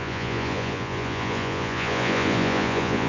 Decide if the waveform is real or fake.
fake